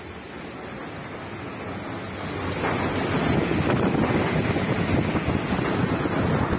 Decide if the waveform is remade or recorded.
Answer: recorded